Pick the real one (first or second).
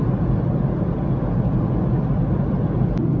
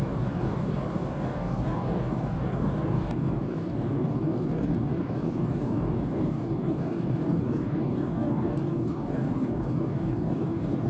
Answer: first